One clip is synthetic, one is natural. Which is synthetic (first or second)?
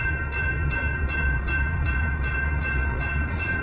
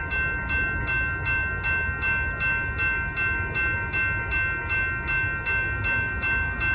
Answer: first